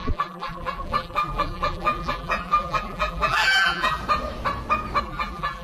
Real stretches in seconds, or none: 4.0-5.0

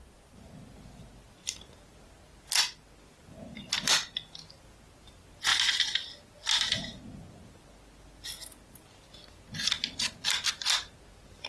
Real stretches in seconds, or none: 0.0-11.5